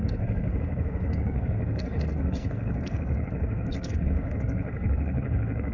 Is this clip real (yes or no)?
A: no